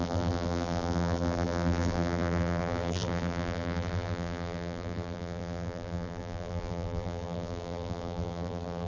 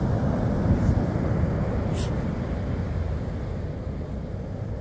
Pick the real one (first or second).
second